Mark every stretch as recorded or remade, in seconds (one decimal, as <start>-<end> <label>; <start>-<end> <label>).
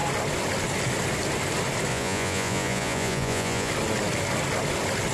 0.0-1.9 recorded; 1.9-3.7 remade; 3.7-5.1 recorded